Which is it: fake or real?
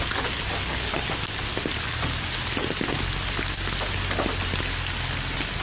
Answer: real